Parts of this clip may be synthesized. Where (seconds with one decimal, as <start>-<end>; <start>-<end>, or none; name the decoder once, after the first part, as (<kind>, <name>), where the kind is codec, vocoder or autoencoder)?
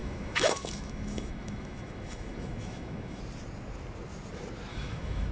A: 0.0-3.2 (autoencoder, DAC-VAE); 4.7-5.3